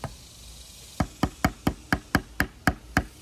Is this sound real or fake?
real